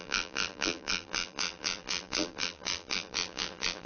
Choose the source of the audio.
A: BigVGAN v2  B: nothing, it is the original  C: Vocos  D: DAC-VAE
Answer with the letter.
A